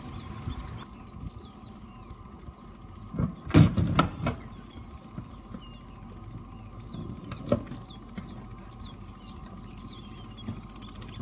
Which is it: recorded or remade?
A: recorded